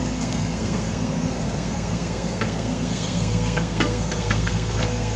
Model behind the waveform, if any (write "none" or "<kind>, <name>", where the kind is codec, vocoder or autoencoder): codec, SNAC